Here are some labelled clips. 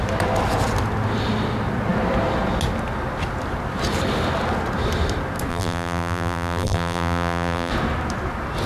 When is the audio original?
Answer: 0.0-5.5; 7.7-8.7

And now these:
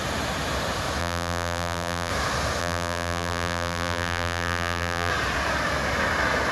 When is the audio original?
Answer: 0.0-1.0; 2.1-2.6; 5.1-6.5

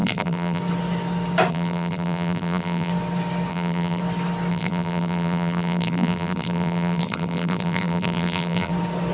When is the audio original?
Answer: 0.6-1.5; 2.9-3.5; 4.0-4.5; 8.7-9.1

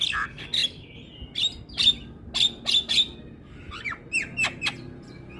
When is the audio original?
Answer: 0.0-5.4